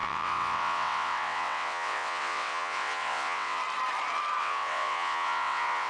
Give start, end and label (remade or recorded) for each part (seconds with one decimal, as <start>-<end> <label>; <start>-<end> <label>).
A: 0.0-3.6 remade; 3.6-4.4 recorded; 4.4-5.9 remade

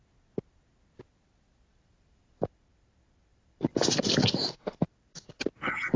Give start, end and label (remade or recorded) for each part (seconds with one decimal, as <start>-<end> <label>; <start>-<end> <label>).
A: 0.0-1.7 recorded; 1.7-2.6 remade; 2.6-3.3 recorded; 3.3-5.4 remade; 5.4-6.0 recorded

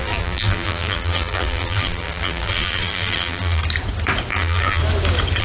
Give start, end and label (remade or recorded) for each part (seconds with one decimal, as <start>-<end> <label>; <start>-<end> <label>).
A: 0.0-3.6 remade; 3.6-4.3 recorded; 4.3-4.8 remade; 4.8-5.4 recorded